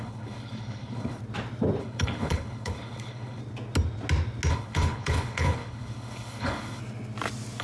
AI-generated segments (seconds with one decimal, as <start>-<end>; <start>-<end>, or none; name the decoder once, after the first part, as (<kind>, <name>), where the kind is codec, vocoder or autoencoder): 0.0-1.2 (codec, HILCodec); 1.8-3.4; 4.5-6.8